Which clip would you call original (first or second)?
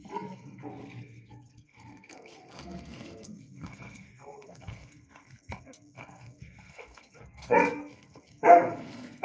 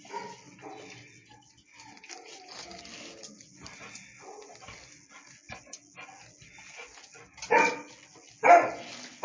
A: second